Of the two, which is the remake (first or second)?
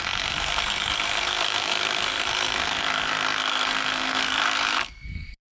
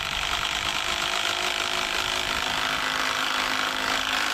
first